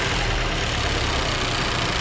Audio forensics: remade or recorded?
recorded